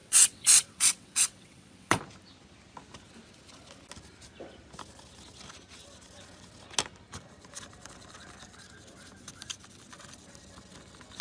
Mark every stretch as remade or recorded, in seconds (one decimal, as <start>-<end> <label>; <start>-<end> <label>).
0.0-2.0 remade; 2.0-11.2 recorded